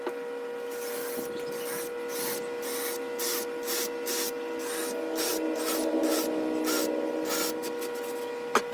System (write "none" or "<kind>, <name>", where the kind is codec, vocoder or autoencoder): none